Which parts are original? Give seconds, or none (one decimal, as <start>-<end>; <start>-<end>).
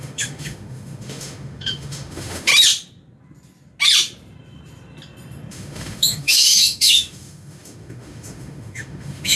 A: 2.5-5.5